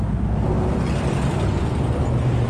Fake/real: real